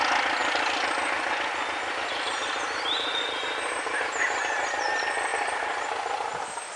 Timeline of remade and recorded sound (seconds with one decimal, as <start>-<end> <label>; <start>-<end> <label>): 0.0-6.8 recorded